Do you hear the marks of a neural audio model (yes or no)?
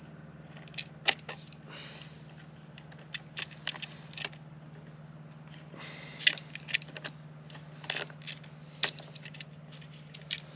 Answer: no